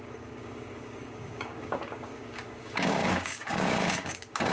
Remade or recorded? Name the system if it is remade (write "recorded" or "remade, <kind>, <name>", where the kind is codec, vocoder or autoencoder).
remade, codec, DAC